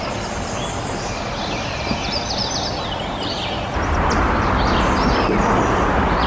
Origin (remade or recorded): recorded